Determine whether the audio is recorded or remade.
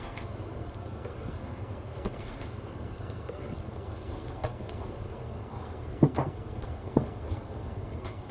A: remade